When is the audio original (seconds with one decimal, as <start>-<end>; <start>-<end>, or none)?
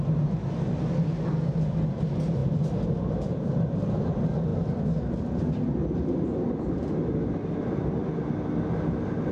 0.0-2.4; 3.5-9.3